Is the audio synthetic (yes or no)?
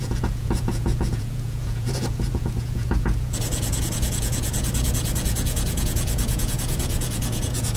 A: yes